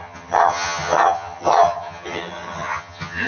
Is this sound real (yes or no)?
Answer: no